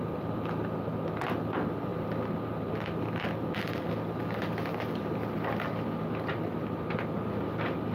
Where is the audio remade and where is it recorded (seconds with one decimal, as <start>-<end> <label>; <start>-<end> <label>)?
0.0-7.9 recorded

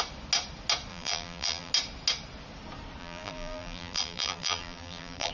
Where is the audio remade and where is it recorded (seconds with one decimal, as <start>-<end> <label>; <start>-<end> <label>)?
0.0-0.9 recorded; 0.9-1.7 remade; 1.7-3.0 recorded; 3.0-5.3 remade

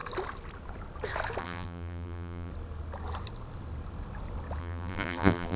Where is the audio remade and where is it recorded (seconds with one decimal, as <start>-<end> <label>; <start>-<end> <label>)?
0.0-1.4 recorded; 1.4-2.5 remade; 2.5-4.6 recorded; 4.6-5.6 remade

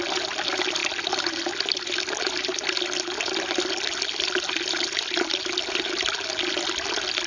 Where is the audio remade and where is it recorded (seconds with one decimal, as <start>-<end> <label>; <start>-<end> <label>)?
0.0-7.3 recorded

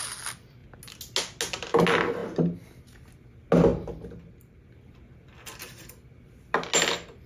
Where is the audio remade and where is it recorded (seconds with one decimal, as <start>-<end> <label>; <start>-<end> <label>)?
0.0-7.3 recorded

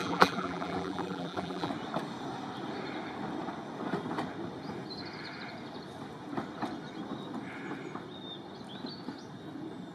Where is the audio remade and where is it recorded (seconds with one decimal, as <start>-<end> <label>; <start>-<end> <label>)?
0.0-1.7 remade; 1.7-9.9 recorded